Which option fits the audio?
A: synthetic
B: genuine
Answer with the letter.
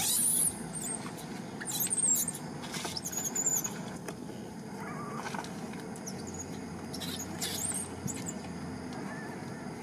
B